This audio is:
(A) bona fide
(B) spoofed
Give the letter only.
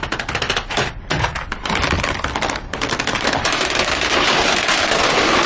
A